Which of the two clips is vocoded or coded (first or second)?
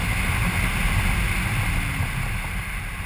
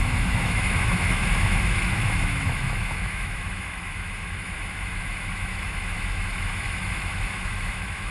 second